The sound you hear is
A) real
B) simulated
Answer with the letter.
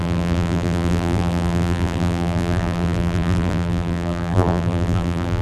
B